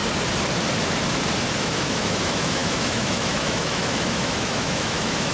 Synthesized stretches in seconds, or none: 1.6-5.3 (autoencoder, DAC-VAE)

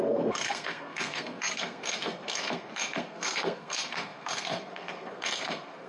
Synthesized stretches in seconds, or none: 0.0-5.9 (codec, SNAC)